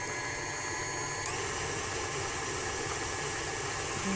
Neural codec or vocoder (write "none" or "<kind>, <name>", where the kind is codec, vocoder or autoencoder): none